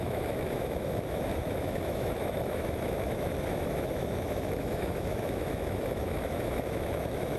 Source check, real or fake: fake